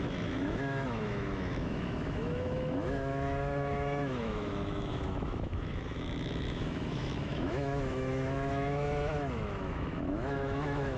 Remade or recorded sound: remade